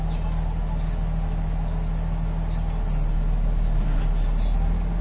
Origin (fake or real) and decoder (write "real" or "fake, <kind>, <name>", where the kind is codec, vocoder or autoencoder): real